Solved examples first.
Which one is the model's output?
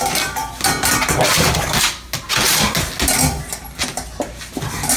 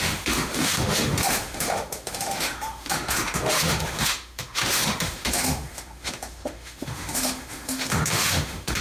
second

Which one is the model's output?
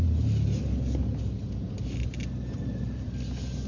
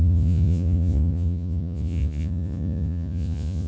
second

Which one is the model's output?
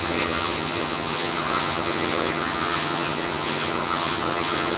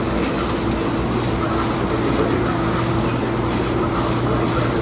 first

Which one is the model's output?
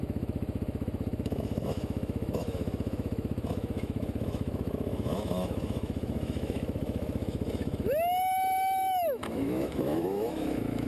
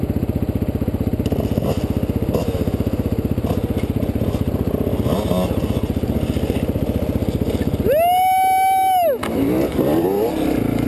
first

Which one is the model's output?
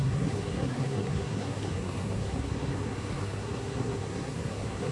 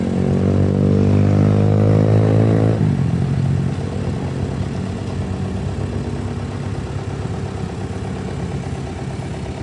first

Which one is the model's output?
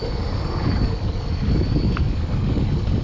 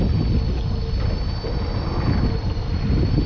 first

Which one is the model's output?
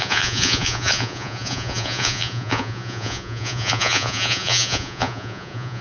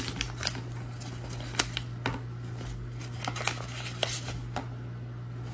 first